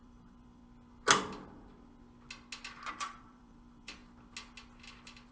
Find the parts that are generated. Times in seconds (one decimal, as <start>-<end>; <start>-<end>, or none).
0.0-0.6; 2.9-4.0